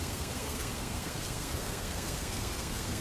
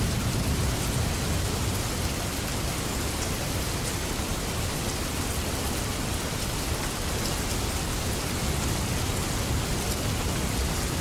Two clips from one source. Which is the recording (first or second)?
second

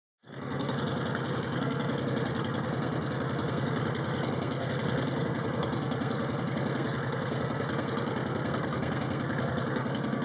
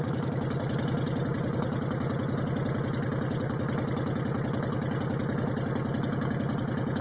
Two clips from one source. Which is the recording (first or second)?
second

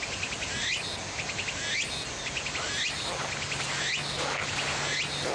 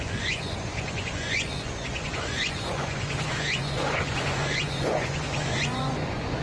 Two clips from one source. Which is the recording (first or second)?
first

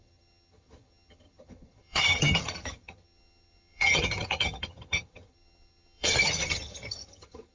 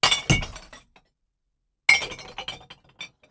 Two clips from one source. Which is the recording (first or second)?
second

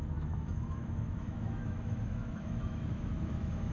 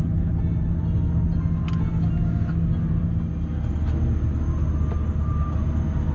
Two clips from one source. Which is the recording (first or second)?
second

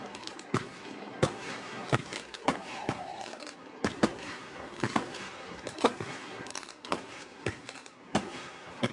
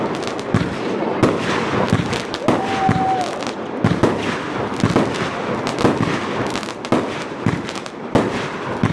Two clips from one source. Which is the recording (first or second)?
second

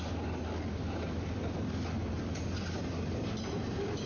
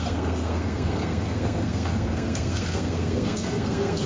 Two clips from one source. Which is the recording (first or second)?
first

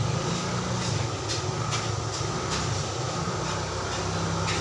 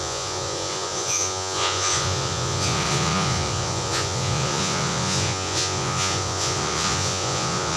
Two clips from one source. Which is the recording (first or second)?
first